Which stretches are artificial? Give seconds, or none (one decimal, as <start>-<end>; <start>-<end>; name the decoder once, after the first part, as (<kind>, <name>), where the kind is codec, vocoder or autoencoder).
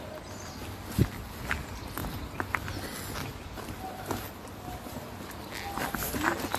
none